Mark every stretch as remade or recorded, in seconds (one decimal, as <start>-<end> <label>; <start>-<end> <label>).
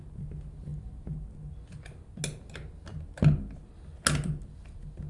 0.0-5.1 recorded